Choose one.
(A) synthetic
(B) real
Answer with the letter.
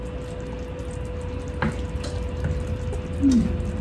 B